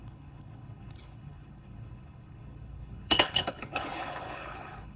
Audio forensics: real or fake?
fake